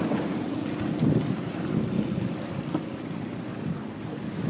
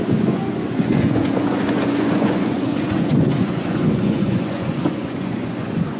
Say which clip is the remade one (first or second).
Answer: second